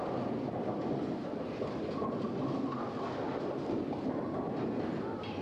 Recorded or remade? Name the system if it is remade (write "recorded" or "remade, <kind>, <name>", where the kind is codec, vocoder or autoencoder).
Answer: recorded